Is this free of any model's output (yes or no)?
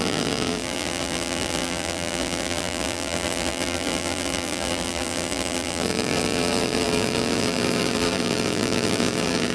no